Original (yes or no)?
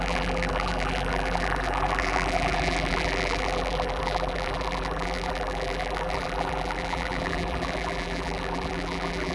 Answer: no